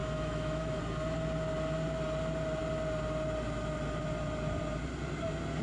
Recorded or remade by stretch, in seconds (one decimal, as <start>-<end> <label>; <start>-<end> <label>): 0.0-0.8 remade; 0.8-5.6 recorded